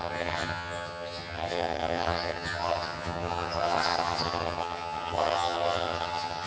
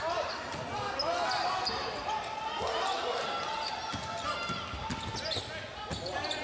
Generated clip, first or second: first